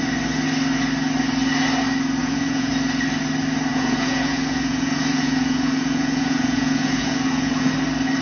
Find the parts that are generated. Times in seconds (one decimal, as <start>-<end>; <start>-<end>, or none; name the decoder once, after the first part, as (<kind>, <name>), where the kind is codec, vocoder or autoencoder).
2.2-2.7 (vocoder, Vocos); 3.7-7.7